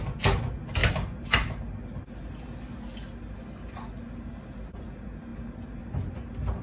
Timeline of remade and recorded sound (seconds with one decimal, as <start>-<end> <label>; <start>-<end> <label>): 0.0-6.6 recorded